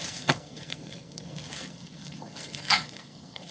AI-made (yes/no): yes